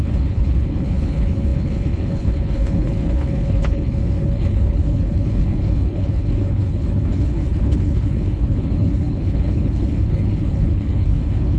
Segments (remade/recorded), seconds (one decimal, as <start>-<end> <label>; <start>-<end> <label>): 0.0-11.6 remade